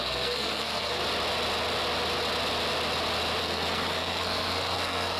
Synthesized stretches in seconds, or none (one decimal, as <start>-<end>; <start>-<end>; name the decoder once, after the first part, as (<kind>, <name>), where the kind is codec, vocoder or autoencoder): 0.0-1.0 (codec, SNAC); 3.4-5.2